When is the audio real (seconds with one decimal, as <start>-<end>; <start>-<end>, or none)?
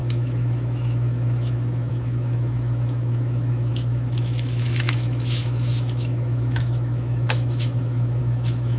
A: none